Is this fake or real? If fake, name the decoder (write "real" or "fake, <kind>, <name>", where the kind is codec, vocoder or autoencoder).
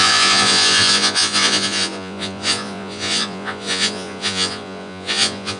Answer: fake, vocoder, Vocos